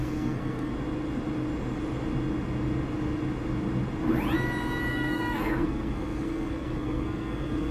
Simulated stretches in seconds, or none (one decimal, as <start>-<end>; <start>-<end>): 0.0-0.7; 4.9-7.7